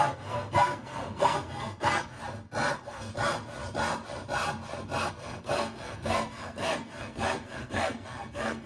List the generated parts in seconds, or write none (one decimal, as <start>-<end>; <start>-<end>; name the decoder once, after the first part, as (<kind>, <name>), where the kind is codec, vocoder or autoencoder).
0.0-2.2 (codec, SNAC); 2.7-3.1; 5.1-8.7

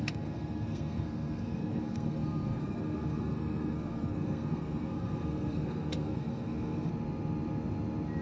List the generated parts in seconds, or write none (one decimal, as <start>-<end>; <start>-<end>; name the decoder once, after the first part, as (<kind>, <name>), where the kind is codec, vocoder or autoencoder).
0.0-6.9 (codec, SNAC)

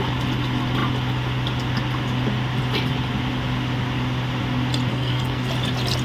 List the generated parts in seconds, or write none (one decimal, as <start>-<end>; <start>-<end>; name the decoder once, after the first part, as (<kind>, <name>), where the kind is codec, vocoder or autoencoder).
4.9-5.5 (codec, SNAC)